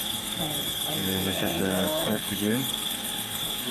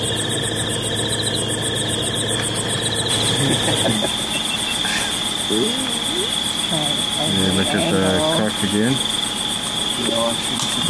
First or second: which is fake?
first